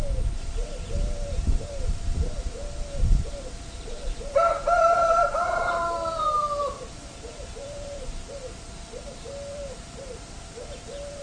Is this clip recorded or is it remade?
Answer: remade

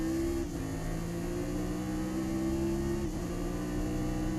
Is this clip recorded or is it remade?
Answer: recorded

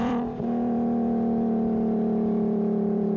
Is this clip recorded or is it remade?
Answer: remade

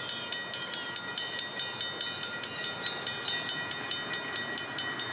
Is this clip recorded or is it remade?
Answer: recorded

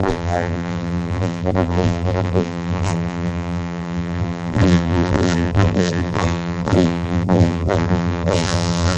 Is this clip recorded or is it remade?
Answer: remade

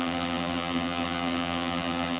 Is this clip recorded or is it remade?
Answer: remade